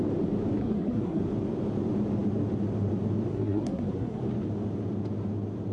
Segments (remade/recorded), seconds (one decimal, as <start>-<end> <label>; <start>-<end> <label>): 0.0-0.6 recorded; 0.6-1.2 remade; 1.2-3.3 recorded; 3.3-4.2 remade; 4.2-5.7 recorded